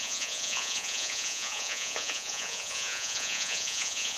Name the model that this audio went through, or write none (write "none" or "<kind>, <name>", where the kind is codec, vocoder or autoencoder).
vocoder, Vocos